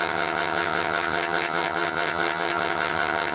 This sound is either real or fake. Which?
fake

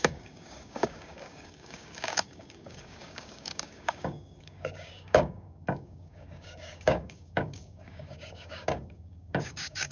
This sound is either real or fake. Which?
fake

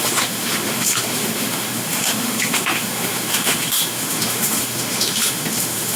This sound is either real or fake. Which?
fake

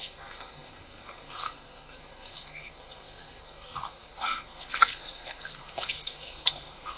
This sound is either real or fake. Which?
fake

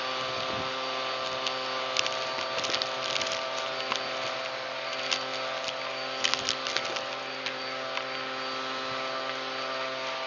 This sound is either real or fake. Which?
real